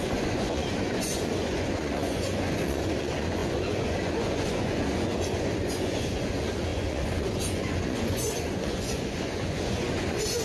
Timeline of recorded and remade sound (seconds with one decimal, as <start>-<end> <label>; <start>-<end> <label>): 0.0-10.4 remade